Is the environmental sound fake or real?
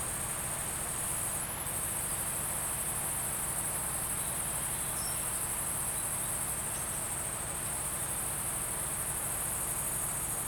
real